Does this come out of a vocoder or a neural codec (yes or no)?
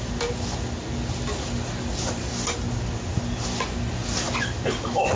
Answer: no